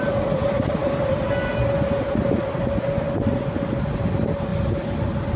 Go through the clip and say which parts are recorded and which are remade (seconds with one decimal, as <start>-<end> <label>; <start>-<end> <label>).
0.0-5.4 recorded